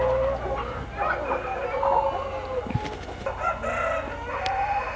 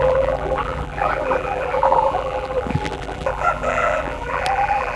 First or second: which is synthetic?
second